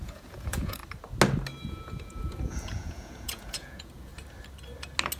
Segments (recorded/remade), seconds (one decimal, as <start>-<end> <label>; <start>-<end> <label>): 0.0-0.8 remade; 0.8-1.7 recorded; 1.7-4.1 remade; 4.1-5.2 recorded